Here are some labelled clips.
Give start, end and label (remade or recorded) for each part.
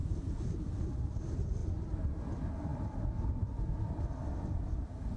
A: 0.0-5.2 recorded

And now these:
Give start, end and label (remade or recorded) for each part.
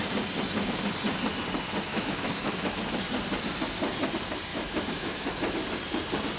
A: 0.0-1.9 recorded; 1.9-3.0 remade; 3.0-4.5 recorded; 4.5-5.3 remade; 5.3-6.4 recorded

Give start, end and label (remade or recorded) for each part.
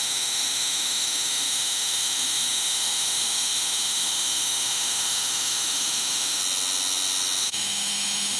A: 0.0-6.4 remade; 6.4-7.4 recorded; 7.4-8.4 remade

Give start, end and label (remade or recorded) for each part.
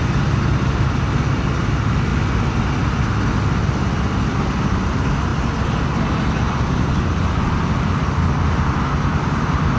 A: 0.0-9.8 recorded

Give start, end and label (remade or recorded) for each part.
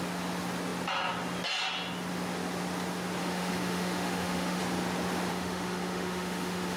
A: 0.0-3.2 recorded; 3.2-4.6 remade; 4.6-5.3 recorded; 5.3-6.8 remade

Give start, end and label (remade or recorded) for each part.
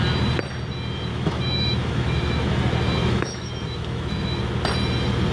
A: 0.0-1.1 recorded; 1.1-2.6 remade; 2.6-3.0 recorded; 3.0-4.4 remade; 4.4-5.3 recorded